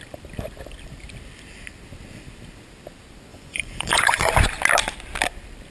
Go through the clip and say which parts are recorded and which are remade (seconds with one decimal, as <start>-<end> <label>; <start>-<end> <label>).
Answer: 0.0-3.3 recorded; 3.3-4.4 remade; 4.4-5.7 recorded